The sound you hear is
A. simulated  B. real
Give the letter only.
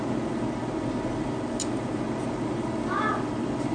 B